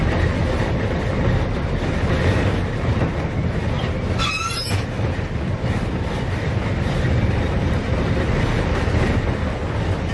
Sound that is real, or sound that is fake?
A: real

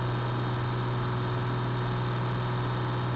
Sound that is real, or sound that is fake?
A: real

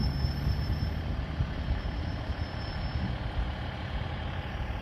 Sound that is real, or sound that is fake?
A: fake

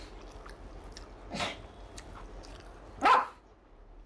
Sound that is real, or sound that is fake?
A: real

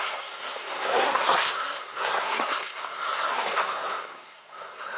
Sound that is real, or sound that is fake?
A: fake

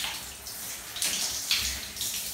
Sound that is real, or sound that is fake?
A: real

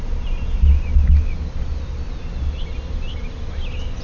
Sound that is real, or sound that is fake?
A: real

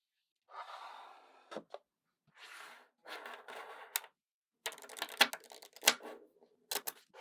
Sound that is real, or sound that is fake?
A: real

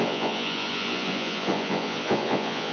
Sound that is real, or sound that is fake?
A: fake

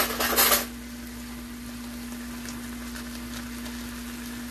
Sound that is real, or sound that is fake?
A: real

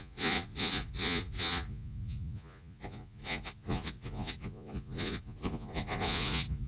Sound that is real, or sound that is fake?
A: fake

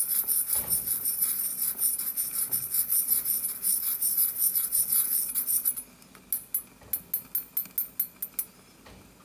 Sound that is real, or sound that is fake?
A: real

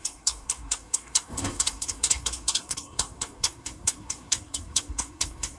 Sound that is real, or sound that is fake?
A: fake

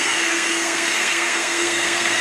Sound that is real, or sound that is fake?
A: fake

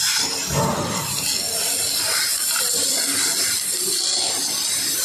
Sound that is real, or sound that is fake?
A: real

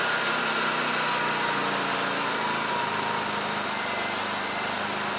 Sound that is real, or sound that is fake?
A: real